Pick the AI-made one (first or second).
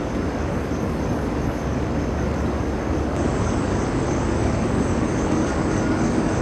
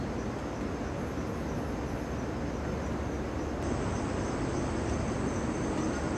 first